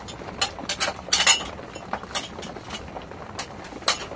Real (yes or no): yes